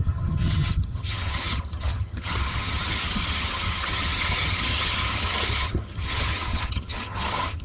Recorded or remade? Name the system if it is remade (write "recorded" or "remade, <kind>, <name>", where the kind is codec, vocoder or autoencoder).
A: remade, vocoder, HiFi-GAN